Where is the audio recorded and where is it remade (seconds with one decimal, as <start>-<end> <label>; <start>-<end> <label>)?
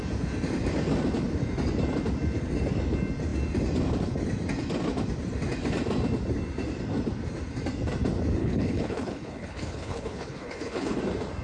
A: 0.0-8.4 recorded; 8.4-11.0 remade; 11.0-11.4 recorded